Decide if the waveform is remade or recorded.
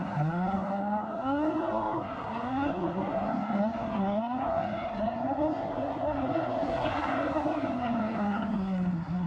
remade